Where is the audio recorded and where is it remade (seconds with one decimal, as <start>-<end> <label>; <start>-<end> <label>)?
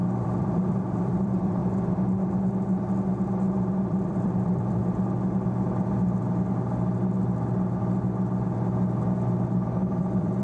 0.0-1.6 remade; 1.6-3.8 recorded; 3.8-4.8 remade; 4.8-10.0 recorded; 10.0-10.4 remade